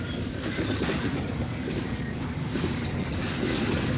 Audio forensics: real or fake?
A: fake